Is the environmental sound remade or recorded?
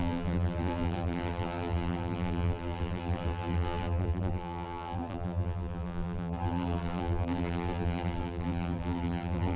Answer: remade